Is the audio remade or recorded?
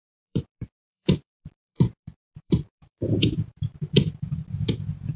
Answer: remade